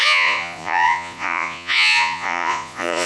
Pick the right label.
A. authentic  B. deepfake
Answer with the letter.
B